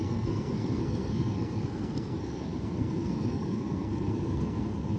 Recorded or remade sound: remade